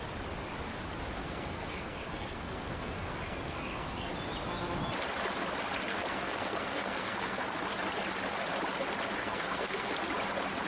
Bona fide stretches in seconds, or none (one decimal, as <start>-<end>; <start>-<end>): 0.0-1.2; 4.1-5.9; 7.6-9.2; 9.9-10.7